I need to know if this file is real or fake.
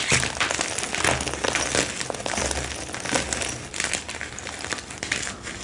real